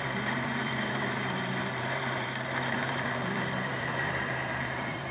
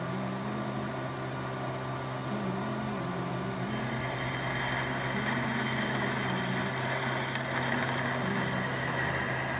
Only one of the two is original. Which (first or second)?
second